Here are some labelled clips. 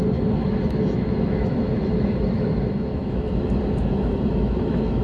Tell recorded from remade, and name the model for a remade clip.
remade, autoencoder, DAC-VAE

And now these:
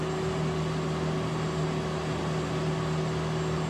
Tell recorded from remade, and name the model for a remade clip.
recorded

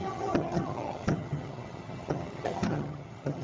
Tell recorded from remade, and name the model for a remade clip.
remade, vocoder, HiFi-GAN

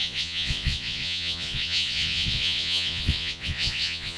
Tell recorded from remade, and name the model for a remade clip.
remade, vocoder, Vocos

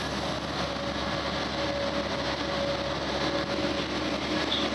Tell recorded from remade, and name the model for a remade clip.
recorded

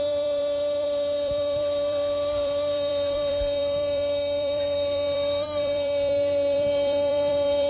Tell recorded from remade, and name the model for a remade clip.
remade, vocoder, BigVGAN v2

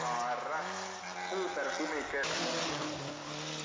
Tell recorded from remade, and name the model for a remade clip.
recorded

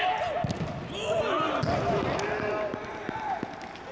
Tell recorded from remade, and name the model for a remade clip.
recorded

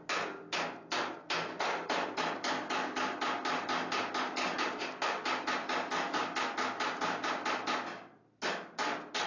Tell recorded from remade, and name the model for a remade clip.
recorded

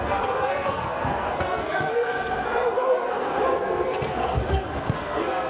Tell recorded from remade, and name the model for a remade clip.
remade, codec, SNAC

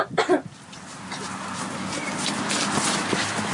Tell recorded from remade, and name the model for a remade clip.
recorded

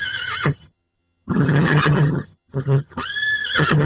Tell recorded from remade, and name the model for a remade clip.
remade, vocoder, HiFi-GAN